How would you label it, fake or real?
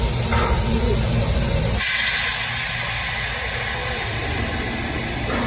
real